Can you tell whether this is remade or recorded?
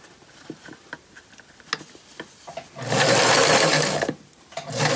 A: recorded